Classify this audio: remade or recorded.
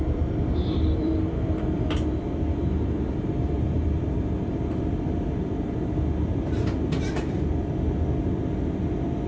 remade